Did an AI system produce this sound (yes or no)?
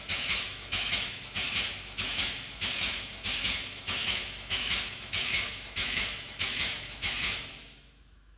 yes